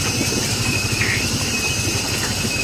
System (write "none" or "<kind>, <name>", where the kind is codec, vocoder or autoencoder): none